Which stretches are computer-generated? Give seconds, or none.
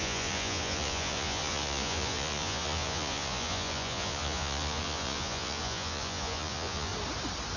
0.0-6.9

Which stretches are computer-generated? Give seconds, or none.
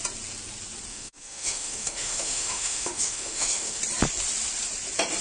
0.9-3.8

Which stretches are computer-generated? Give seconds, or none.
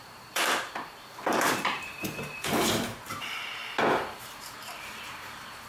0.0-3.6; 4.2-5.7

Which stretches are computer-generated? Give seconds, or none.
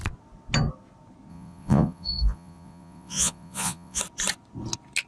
1.3-4.0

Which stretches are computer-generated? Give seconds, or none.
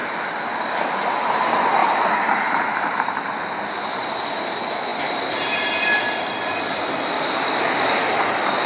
1.8-4.0